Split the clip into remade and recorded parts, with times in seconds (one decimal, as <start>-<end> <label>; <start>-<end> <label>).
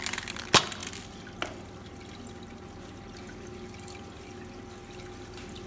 0.0-5.7 recorded